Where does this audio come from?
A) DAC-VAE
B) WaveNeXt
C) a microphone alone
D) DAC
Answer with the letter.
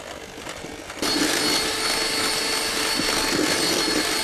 C